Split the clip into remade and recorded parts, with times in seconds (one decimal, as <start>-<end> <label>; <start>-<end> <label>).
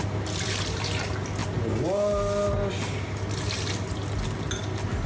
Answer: 0.0-5.1 recorded